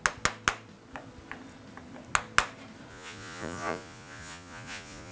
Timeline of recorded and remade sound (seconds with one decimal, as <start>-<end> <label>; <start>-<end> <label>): 0.0-2.9 recorded; 2.9-5.1 remade